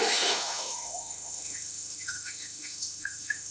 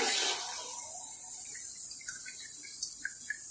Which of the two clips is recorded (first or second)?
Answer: second